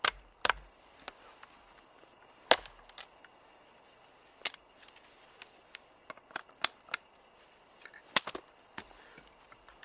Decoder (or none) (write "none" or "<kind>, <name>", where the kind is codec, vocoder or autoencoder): none